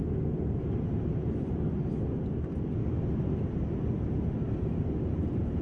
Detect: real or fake real